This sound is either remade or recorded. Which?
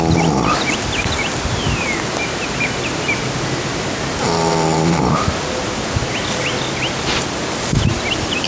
recorded